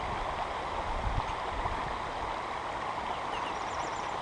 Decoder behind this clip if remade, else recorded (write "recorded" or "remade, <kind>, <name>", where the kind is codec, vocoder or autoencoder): recorded